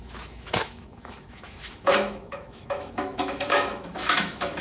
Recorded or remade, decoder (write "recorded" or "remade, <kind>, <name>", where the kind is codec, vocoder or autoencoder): remade, autoencoder, DAC-VAE